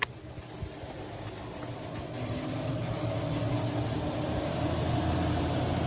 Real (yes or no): yes